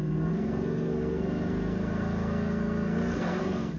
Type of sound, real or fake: fake